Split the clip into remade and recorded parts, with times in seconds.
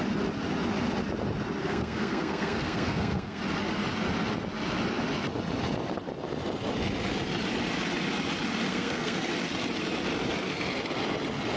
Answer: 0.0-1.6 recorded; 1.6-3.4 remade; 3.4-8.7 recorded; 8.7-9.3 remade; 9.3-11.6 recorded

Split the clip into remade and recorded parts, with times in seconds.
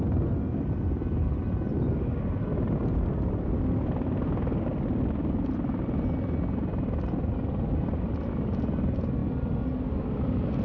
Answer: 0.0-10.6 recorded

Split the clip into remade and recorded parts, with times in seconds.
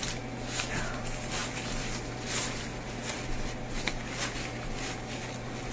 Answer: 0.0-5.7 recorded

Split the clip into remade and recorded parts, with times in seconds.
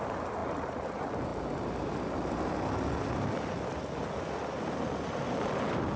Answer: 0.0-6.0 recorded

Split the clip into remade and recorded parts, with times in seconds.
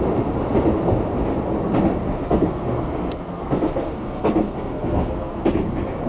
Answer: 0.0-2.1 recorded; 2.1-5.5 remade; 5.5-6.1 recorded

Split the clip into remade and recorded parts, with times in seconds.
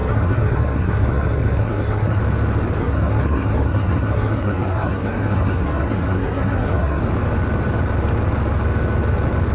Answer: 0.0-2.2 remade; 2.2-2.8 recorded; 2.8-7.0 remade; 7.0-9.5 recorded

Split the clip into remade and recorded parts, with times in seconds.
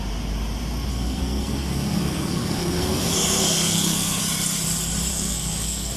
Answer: 0.0-0.9 recorded; 0.9-4.2 remade; 4.2-5.1 recorded; 5.1-6.0 remade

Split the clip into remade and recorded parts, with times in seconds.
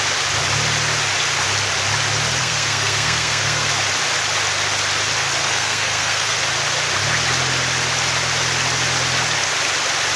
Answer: 0.0-2.4 recorded; 2.4-3.7 remade; 3.7-5.4 recorded; 5.4-6.4 remade; 6.4-10.2 recorded